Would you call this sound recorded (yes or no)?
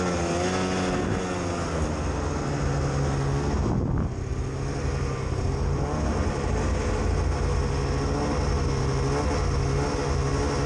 yes